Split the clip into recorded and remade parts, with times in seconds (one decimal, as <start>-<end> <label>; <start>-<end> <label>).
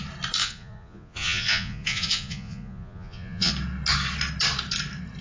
0.0-0.4 recorded; 0.4-3.5 remade; 3.5-5.2 recorded